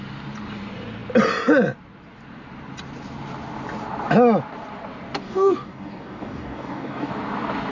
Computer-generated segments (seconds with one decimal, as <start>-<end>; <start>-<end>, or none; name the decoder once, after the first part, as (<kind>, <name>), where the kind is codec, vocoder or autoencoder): 5.2-7.1 (codec, DAC)